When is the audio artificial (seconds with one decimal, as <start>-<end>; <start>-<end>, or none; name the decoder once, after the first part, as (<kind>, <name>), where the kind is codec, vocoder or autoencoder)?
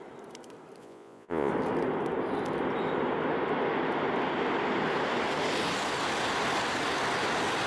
0.8-1.5 (vocoder, Vocos)